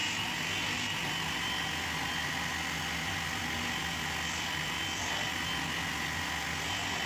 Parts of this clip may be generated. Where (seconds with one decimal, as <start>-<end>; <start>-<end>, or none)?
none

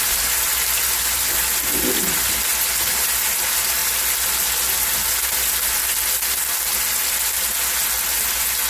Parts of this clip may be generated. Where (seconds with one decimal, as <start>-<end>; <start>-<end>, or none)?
none

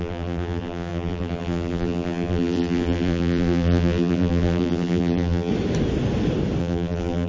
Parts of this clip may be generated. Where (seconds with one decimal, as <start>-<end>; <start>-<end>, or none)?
0.0-5.5; 6.6-7.3

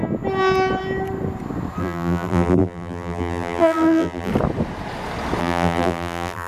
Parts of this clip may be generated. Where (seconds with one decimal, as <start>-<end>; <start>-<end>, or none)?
1.8-4.3; 5.4-6.5